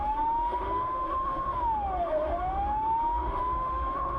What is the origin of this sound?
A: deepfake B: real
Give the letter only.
A